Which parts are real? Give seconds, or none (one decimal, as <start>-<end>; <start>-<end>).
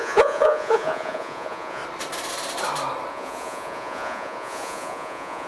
1.8-3.1